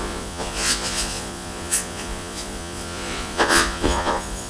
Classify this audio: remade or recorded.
remade